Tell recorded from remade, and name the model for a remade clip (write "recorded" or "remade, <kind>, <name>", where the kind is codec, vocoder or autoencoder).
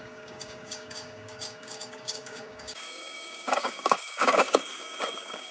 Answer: remade, codec, DAC